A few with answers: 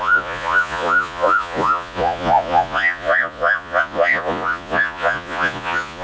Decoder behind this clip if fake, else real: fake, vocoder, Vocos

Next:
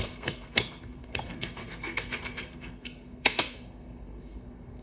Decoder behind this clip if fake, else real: fake, codec, SNAC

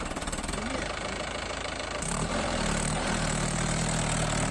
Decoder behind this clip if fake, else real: fake, vocoder, BigVGAN v2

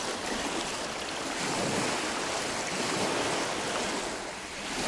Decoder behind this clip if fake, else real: real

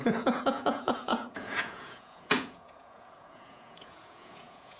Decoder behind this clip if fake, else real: fake, vocoder, Vocos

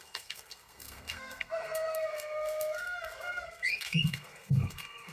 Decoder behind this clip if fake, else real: fake, codec, SNAC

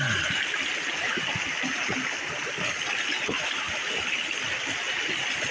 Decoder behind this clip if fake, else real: real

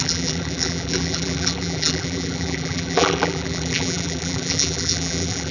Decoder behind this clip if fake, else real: fake, vocoder, BigVGAN v2